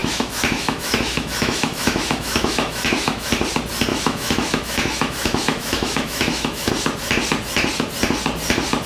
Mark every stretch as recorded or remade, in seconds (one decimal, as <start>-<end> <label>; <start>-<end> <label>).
0.0-3.3 remade; 3.3-3.9 recorded; 3.9-6.7 remade; 6.7-8.9 recorded